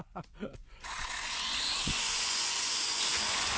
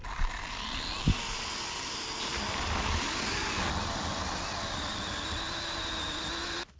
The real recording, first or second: second